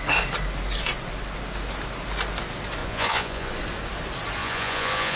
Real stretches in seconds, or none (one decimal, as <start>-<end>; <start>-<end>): 0.0-2.8; 3.5-4.4